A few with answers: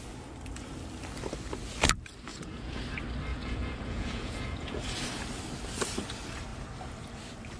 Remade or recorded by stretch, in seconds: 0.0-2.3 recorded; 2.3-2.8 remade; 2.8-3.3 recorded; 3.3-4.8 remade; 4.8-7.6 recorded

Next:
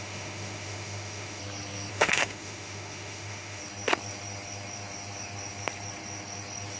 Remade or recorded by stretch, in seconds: 0.0-1.4 remade; 1.4-1.9 recorded; 1.9-3.6 remade; 3.6-6.8 recorded

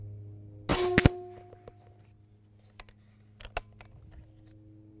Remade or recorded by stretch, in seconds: 0.0-5.0 recorded

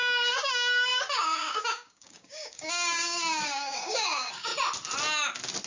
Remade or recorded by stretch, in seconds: 0.0-4.5 remade; 4.5-5.7 recorded